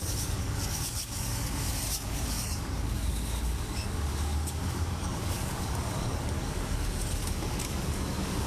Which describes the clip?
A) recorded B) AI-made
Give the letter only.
B